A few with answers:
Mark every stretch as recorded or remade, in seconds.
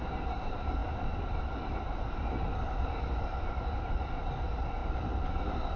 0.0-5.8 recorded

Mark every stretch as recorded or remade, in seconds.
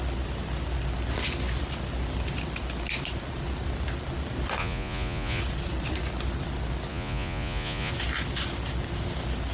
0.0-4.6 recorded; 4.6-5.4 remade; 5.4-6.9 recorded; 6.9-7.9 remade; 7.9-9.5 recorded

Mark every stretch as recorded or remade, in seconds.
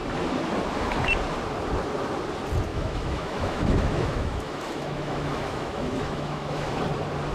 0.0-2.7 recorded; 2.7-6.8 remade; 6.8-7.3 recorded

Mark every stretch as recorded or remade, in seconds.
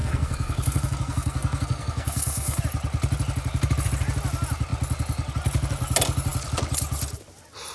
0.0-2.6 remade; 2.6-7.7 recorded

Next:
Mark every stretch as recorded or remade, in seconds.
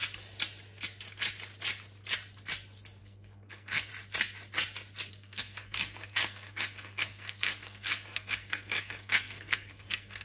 0.0-3.0 recorded; 3.0-3.9 remade; 3.9-5.1 recorded; 5.1-10.2 remade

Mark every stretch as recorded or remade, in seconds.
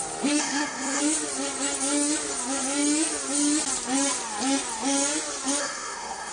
0.0-0.4 recorded; 0.4-1.0 remade; 1.0-5.6 recorded; 5.6-6.3 remade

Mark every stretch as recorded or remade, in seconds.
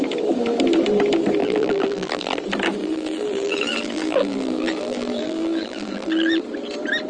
0.0-1.4 recorded; 1.4-2.4 remade; 2.4-2.8 recorded; 2.8-6.4 remade; 6.4-7.1 recorded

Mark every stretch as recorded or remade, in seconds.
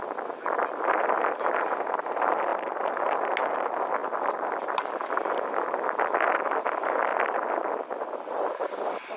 0.0-9.2 recorded